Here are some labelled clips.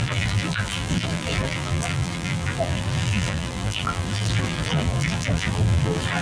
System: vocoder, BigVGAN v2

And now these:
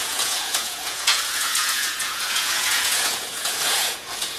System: vocoder, Vocos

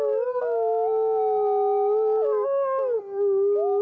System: none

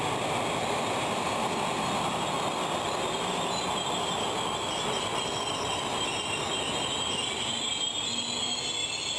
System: none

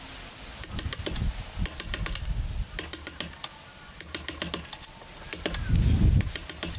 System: none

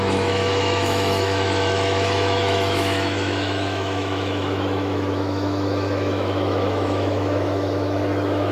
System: autoencoder, DAC-VAE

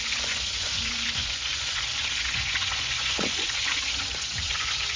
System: vocoder, Vocos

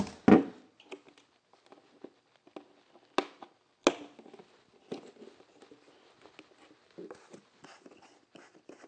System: none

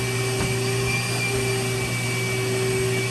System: none